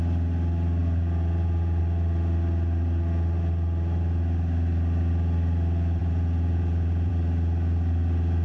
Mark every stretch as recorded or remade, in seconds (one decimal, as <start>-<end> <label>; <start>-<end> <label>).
0.0-0.8 recorded; 0.8-1.8 remade; 1.8-6.0 recorded; 6.0-7.1 remade; 7.1-8.4 recorded